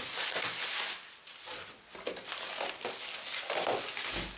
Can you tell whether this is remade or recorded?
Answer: recorded